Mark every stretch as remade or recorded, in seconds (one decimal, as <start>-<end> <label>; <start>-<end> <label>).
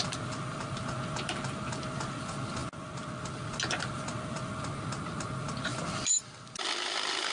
0.0-7.3 recorded